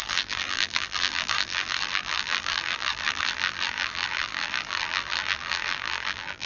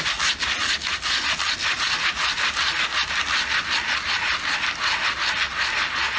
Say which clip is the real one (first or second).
second